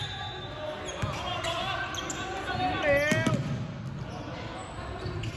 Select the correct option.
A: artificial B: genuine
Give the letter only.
B